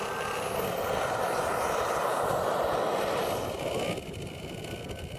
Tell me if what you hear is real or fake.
real